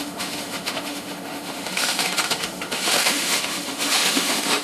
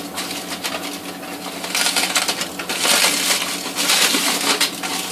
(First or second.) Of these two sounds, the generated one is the first